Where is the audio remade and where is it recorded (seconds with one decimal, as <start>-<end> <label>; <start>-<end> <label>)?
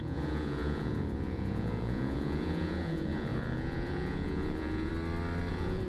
0.0-4.9 remade; 4.9-5.5 recorded; 5.5-5.9 remade